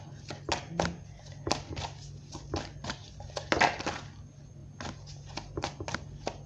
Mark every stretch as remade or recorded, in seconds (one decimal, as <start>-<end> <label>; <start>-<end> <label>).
0.0-6.5 recorded

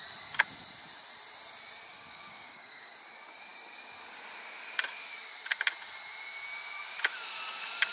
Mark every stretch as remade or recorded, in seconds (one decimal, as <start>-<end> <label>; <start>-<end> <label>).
0.0-1.9 recorded; 1.9-2.9 remade; 2.9-7.9 recorded

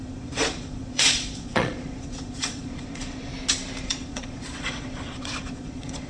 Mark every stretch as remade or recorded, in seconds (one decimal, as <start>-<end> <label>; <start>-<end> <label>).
0.0-3.3 remade; 3.3-3.8 recorded; 3.8-6.1 remade

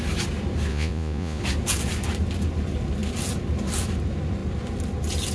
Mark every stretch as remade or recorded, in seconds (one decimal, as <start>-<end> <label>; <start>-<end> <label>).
0.0-0.7 recorded; 0.7-1.4 remade; 1.4-5.3 recorded

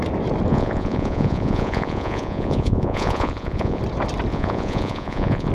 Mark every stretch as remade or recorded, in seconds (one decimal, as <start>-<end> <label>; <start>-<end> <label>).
0.0-0.5 recorded; 0.5-3.8 remade; 3.8-4.3 recorded; 4.3-5.5 remade

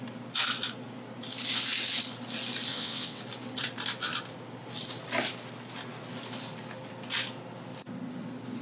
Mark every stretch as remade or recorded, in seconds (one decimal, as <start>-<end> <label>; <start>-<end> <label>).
0.0-2.7 recorded; 2.7-3.2 remade; 3.2-8.6 recorded